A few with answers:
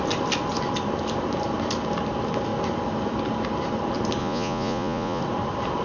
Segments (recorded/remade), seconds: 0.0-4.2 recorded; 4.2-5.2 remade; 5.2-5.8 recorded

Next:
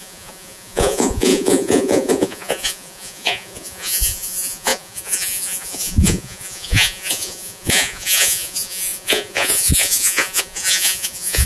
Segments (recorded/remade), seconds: 0.0-11.5 remade

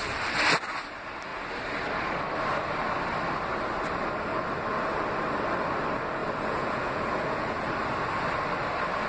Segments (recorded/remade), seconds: 0.0-6.2 recorded; 6.2-7.7 remade; 7.7-9.1 recorded